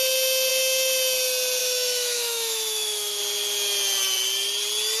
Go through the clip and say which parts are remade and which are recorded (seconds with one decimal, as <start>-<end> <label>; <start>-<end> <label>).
0.0-1.6 recorded; 1.6-3.2 remade; 3.2-5.0 recorded